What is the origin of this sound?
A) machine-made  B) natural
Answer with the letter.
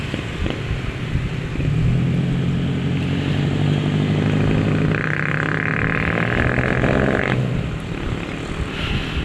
B